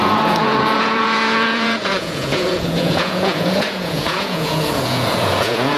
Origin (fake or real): fake